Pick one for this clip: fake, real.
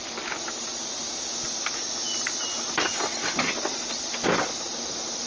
real